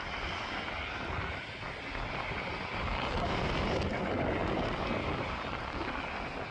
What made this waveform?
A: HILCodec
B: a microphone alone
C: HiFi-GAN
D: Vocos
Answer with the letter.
B